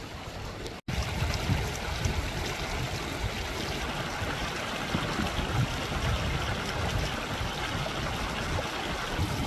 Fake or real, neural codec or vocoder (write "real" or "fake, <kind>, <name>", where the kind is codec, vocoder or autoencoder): real